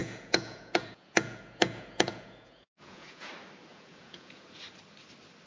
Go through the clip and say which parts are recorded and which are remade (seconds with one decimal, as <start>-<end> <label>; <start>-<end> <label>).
0.0-3.3 remade; 3.3-3.7 recorded; 3.7-4.6 remade; 4.6-5.5 recorded